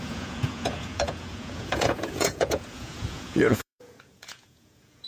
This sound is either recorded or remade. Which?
remade